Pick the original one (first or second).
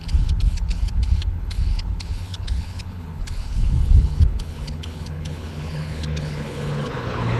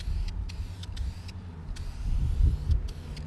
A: second